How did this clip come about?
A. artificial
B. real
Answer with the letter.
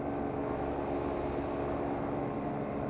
B